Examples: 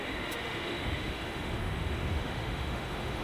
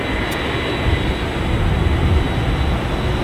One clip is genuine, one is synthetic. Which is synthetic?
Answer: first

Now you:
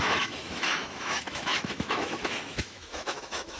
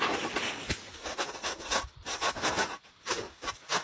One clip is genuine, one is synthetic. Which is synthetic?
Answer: first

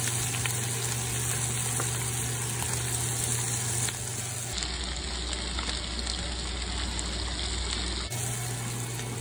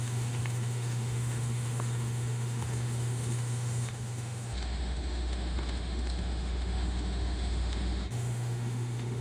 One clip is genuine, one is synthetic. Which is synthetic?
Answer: second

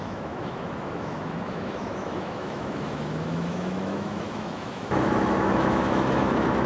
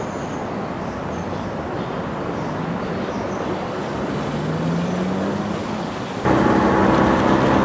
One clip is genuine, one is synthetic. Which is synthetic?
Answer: first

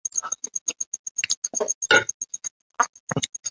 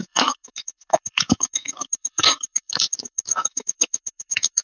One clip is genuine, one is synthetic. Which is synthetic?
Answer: second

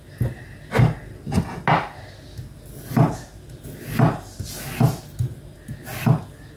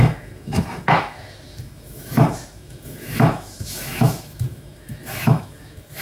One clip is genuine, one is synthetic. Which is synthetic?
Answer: second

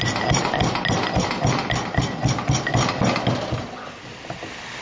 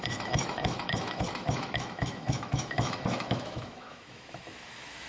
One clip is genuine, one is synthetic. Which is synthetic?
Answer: second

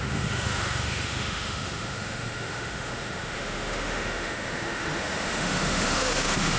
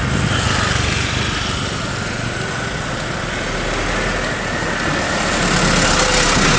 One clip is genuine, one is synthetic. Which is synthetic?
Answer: first